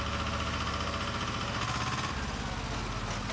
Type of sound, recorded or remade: recorded